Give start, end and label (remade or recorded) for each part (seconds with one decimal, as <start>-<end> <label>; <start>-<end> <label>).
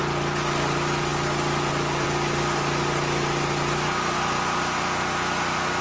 0.0-5.8 recorded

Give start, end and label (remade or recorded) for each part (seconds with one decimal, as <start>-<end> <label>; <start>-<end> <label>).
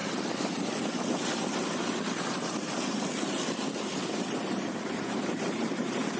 0.0-6.2 recorded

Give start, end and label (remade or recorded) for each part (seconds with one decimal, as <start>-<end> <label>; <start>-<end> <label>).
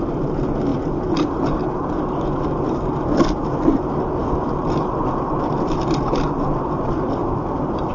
0.0-7.9 recorded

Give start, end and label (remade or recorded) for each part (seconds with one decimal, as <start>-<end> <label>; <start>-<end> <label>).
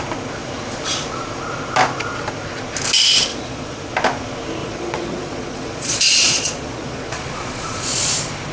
0.0-3.3 recorded; 3.3-3.9 remade; 3.9-4.6 recorded; 4.6-8.1 remade; 8.1-8.5 recorded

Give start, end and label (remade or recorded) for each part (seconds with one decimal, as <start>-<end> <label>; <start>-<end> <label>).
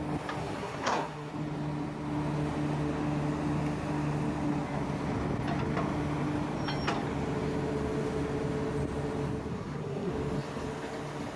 0.0-0.4 recorded; 0.4-1.3 remade; 1.3-9.5 recorded; 9.5-10.1 remade; 10.1-11.4 recorded